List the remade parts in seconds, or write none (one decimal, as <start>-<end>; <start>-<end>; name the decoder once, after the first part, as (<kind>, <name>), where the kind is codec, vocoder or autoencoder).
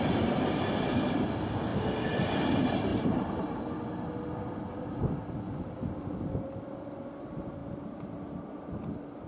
2.9-3.6 (vocoder, BigVGAN v2)